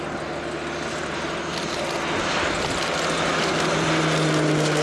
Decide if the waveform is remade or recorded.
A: recorded